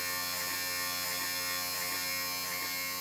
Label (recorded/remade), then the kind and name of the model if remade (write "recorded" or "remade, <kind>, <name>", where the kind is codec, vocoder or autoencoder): recorded